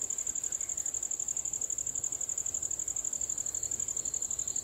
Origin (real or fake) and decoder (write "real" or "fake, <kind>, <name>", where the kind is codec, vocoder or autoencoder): real